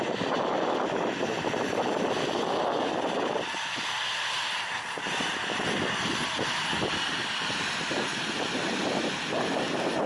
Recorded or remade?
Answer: remade